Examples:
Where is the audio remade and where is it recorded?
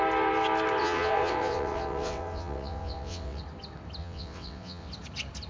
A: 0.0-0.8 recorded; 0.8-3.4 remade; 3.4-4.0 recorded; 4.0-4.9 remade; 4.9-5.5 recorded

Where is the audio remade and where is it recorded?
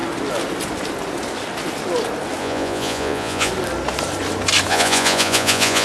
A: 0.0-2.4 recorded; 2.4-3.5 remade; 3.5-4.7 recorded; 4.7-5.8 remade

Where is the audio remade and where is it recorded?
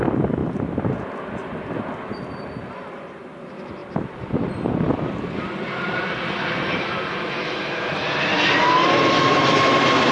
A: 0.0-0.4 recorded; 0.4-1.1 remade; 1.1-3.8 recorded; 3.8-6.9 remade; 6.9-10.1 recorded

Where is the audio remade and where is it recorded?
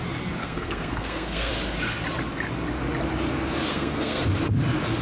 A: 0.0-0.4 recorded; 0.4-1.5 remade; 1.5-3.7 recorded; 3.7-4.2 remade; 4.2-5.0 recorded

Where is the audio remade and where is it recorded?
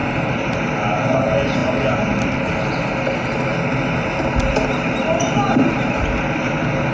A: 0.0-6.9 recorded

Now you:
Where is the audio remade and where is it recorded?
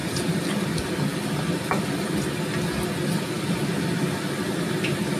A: 0.0-5.2 recorded